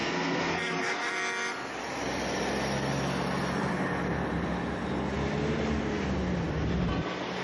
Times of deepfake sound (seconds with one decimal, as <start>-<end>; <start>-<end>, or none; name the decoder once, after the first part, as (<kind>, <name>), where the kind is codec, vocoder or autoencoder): 0.0-1.1 (codec, SNAC)